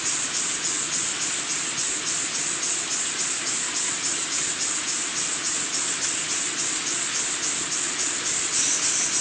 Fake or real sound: real